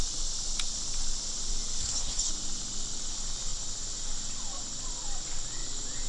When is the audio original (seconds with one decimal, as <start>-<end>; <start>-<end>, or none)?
0.0-1.8; 2.3-6.1